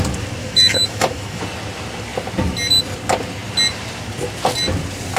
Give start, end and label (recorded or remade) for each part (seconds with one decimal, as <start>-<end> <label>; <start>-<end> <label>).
0.0-0.4 recorded; 0.4-1.4 remade; 1.4-5.2 recorded